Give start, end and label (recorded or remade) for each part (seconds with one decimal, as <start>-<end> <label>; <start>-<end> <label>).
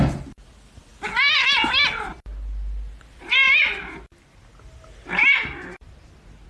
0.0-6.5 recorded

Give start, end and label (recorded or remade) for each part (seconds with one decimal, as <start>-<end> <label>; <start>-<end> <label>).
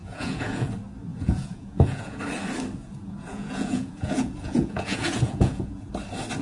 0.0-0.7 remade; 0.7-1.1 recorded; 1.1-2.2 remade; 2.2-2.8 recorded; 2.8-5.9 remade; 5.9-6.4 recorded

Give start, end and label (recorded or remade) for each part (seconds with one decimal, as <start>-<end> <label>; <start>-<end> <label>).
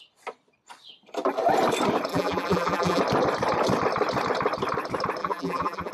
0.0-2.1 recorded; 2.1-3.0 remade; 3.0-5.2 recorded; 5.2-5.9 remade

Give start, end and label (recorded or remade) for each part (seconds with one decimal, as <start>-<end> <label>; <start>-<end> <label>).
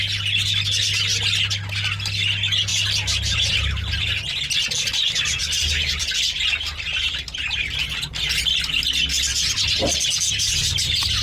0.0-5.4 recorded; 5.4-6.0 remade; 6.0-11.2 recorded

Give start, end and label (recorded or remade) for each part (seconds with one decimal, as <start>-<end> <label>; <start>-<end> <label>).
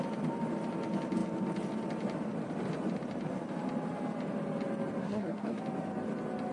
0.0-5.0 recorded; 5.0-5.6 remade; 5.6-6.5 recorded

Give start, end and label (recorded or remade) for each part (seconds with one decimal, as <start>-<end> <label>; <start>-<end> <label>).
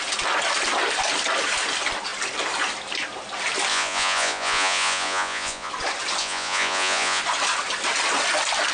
0.0-3.7 recorded; 3.7-5.7 remade; 5.7-6.2 recorded; 6.2-7.2 remade; 7.2-8.7 recorded